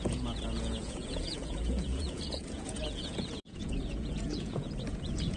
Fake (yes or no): yes